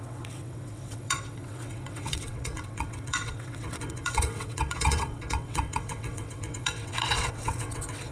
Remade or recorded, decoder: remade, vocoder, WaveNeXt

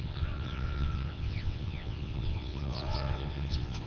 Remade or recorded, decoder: remade, vocoder, WaveNeXt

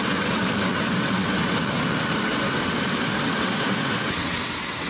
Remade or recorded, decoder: remade, vocoder, WaveNeXt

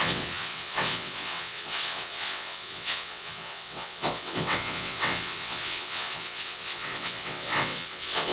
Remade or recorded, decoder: remade, vocoder, WaveNeXt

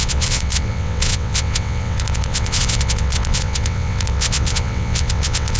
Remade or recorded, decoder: remade, vocoder, WaveNeXt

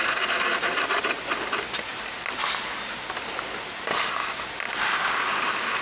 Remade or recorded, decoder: recorded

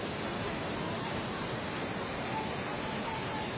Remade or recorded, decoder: recorded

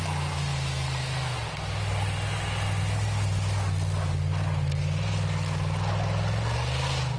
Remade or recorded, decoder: recorded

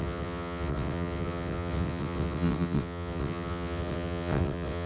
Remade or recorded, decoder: remade, vocoder, WaveNeXt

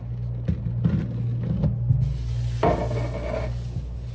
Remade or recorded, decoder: recorded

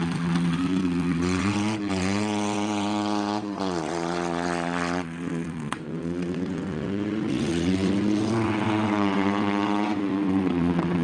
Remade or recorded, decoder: remade, vocoder, WaveNeXt